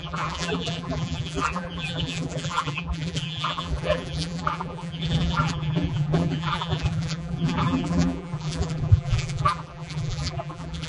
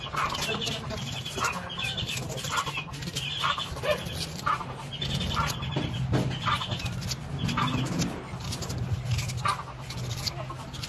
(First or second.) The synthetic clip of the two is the first